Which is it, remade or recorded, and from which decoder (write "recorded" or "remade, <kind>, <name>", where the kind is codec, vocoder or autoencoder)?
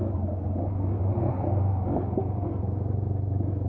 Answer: recorded